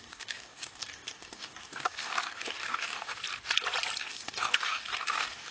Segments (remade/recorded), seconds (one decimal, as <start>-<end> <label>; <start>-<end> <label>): 0.0-3.2 remade; 3.2-4.0 recorded; 4.0-5.5 remade

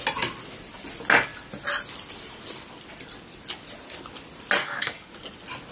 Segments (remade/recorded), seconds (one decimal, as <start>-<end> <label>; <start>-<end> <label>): 0.0-4.6 recorded; 4.6-5.1 remade; 5.1-5.7 recorded

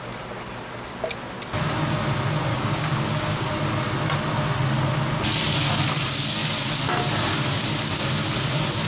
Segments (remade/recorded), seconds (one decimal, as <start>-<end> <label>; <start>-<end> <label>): 0.0-2.5 recorded; 2.5-3.5 remade; 3.5-8.9 recorded

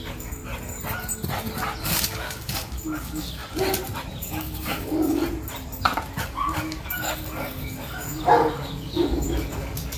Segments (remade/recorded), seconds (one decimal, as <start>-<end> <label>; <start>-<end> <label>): 0.0-0.4 remade; 0.4-1.8 recorded; 1.8-3.4 remade; 3.4-4.2 recorded; 4.2-5.2 remade; 5.2-6.2 recorded; 6.2-10.0 remade

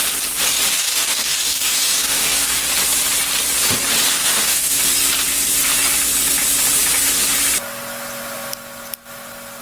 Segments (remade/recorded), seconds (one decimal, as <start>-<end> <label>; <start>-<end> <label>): 0.0-0.7 recorded; 0.7-2.6 remade; 2.6-4.1 recorded; 4.1-4.8 remade; 4.8-9.6 recorded

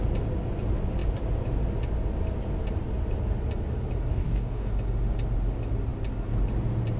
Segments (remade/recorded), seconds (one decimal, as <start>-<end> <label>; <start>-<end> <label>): 0.0-4.1 recorded; 4.1-4.7 remade; 4.7-7.0 recorded

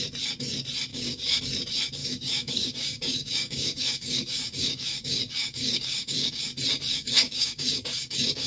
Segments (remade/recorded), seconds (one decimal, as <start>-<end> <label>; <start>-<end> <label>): 0.0-0.9 recorded; 0.9-1.4 remade; 1.4-2.0 recorded; 2.0-6.4 remade; 6.4-6.9 recorded; 6.9-8.5 remade

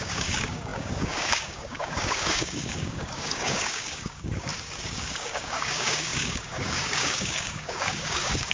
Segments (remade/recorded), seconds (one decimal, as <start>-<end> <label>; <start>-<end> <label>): 0.0-8.5 remade